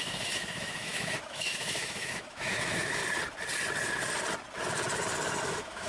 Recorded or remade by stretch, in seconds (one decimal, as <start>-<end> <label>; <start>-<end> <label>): 0.0-3.0 remade; 3.0-5.4 recorded; 5.4-5.9 remade